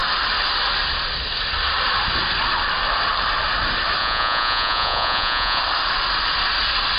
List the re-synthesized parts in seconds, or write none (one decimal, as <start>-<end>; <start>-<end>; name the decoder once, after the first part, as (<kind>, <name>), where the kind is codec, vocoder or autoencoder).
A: 4.0-5.6 (vocoder, Vocos)